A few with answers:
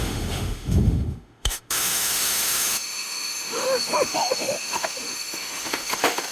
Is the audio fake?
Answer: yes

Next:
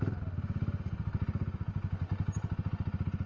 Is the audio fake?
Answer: no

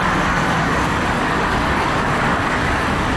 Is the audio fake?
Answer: yes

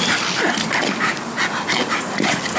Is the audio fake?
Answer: no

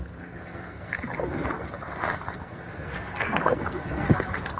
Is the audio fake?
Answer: yes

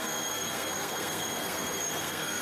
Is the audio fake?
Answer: yes